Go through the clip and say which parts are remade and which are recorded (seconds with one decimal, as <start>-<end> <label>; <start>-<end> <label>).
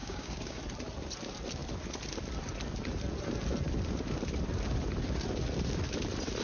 0.0-0.6 remade; 0.6-6.4 recorded